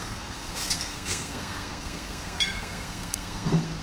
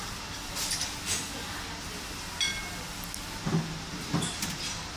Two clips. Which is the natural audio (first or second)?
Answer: second